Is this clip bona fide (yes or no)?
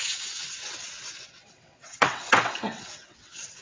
no